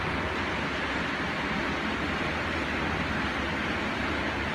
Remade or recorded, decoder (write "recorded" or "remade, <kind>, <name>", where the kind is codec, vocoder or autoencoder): recorded